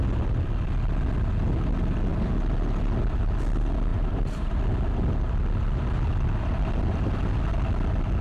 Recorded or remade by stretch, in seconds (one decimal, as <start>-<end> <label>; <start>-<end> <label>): 0.0-3.9 recorded; 3.9-4.6 remade; 4.6-8.2 recorded